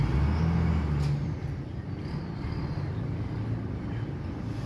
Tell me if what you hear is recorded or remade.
recorded